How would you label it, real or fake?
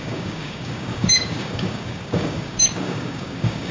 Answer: fake